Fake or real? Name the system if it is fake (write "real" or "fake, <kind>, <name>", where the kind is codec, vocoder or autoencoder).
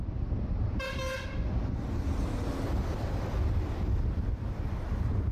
real